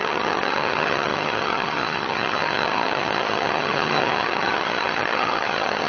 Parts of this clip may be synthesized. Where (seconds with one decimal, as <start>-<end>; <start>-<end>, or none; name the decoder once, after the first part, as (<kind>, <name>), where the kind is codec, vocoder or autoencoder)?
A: 0.0-5.9 (vocoder, HiFi-GAN)